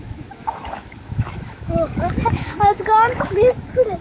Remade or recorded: remade